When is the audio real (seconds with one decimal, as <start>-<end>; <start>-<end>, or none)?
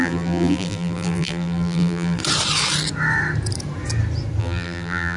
2.2-4.4